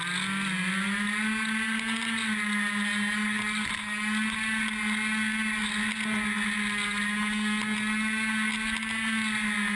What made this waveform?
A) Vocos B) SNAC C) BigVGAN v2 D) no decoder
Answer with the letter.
D